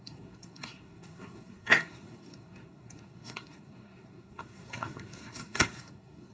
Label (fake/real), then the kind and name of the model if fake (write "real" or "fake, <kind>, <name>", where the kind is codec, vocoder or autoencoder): fake, codec, SNAC